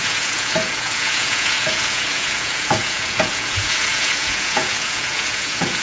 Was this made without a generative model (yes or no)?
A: no